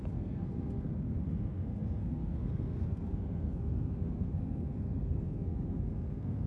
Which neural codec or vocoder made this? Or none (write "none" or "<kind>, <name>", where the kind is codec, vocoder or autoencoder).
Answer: codec, SNAC